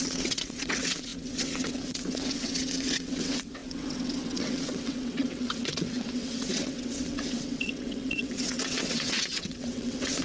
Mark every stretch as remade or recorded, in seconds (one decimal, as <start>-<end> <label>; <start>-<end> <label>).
0.0-10.2 remade